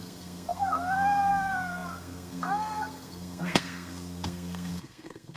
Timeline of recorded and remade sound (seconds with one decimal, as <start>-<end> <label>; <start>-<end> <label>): 0.0-5.4 remade